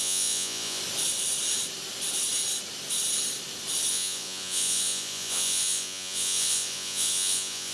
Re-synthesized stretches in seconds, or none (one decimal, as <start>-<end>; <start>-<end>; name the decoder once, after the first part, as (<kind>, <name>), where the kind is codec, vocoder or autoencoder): 0.0-0.8 (vocoder, Vocos); 3.9-7.7